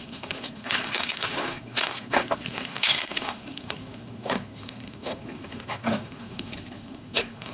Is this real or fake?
fake